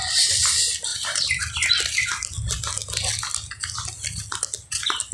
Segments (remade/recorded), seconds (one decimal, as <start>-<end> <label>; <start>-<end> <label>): 0.0-0.9 recorded; 0.9-1.4 remade; 1.4-5.1 recorded